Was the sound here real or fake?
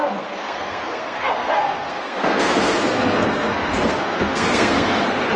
fake